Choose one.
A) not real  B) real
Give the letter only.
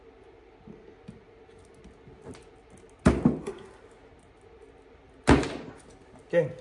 B